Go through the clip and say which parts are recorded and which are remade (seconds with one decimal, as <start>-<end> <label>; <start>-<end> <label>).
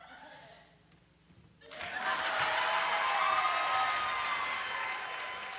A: 0.0-5.6 recorded